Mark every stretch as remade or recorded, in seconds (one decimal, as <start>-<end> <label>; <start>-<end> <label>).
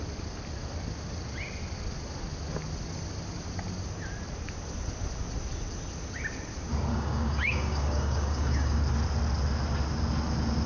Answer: 0.0-6.9 recorded; 6.9-8.8 remade; 8.8-10.7 recorded